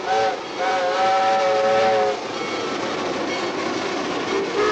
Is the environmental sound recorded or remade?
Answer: recorded